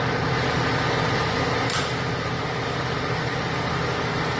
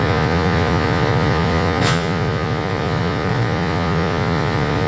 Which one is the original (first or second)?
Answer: first